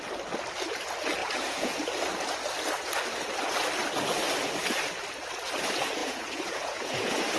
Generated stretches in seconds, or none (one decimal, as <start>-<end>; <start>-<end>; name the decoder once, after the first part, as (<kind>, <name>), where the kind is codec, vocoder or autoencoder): 1.2-1.9 (vocoder, Vocos); 6.0-7.4